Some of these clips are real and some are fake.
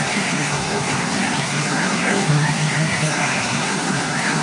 fake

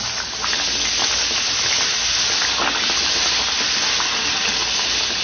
real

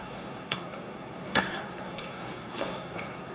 fake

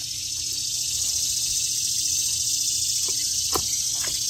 real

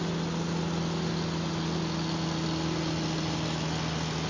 real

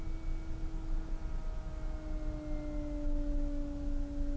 real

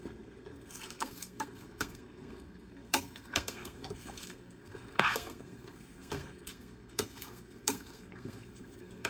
fake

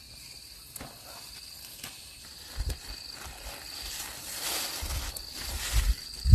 real